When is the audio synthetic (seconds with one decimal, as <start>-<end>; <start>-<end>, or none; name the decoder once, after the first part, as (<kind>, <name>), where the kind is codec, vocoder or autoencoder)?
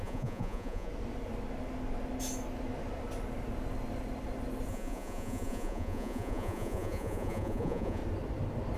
0.0-0.9 (vocoder, Vocos); 4.7-8.0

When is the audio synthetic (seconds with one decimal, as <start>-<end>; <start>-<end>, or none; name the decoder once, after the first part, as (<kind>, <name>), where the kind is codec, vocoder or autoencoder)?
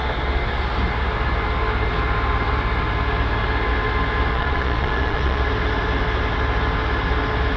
4.3-5.4 (vocoder, Vocos)